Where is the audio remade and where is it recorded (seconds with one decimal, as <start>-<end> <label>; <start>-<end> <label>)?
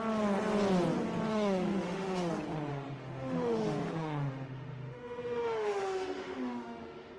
0.0-1.3 recorded; 1.3-2.3 remade; 2.3-2.7 recorded; 2.7-7.2 remade